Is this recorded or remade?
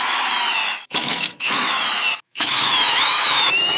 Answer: remade